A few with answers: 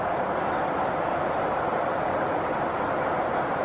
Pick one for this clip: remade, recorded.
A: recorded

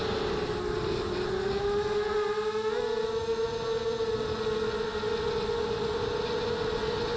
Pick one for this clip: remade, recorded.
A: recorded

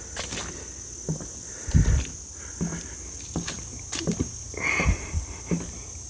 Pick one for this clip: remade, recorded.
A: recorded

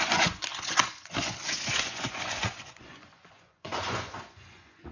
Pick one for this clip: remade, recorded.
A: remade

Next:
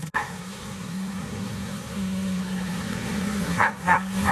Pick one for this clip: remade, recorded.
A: remade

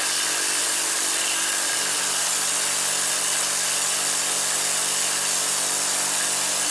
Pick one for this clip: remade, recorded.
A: recorded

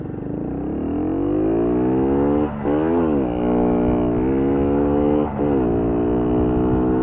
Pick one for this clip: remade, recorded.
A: recorded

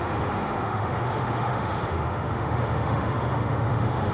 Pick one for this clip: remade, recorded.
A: remade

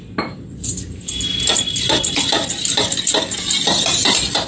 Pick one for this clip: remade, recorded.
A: recorded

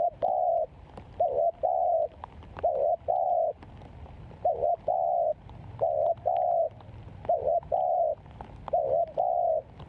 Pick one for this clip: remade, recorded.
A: remade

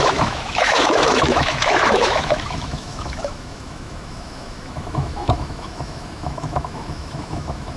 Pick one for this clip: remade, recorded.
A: remade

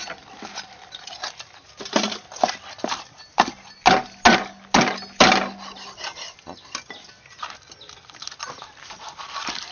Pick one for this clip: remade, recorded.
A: recorded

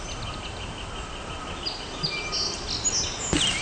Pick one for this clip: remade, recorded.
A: recorded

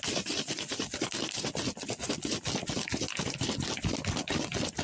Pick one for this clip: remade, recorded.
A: recorded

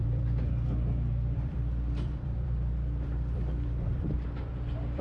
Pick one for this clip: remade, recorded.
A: remade